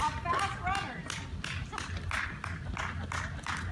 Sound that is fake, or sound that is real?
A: real